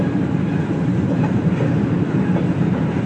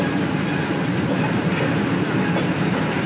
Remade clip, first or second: first